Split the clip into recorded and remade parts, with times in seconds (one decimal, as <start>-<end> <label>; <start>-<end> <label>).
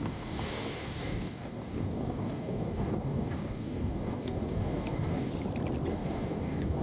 0.0-5.3 remade; 5.3-5.9 recorded; 5.9-6.8 remade